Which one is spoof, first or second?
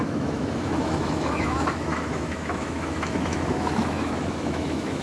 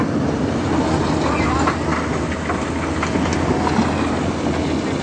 first